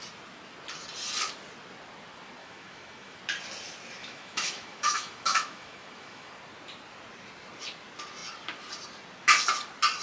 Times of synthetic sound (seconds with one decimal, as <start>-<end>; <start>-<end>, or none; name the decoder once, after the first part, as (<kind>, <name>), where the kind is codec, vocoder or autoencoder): 2.4-3.2 (autoencoder, DAC-VAE); 4.0-6.3